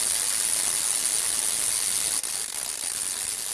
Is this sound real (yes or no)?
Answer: yes